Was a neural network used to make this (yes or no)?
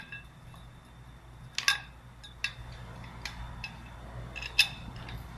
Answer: no